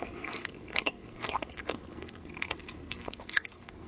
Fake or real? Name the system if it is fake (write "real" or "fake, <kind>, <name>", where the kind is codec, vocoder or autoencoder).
fake, codec, SNAC